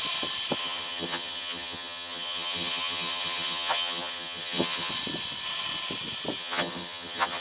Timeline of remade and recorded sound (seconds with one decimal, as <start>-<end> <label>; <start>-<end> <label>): 0.0-0.6 recorded; 0.6-4.9 remade; 4.9-6.4 recorded; 6.4-7.4 remade